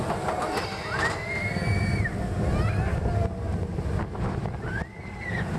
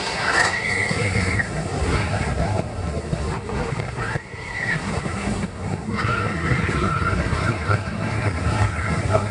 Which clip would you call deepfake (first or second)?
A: second